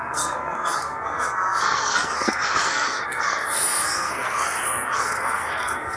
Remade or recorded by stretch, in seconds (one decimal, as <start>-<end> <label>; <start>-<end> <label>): 0.0-6.0 remade